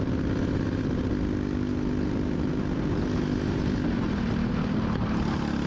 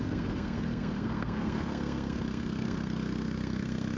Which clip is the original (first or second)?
first